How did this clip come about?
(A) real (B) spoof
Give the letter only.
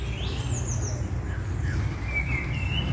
A